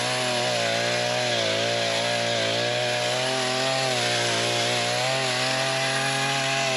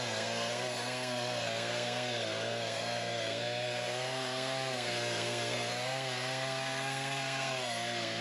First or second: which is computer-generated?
second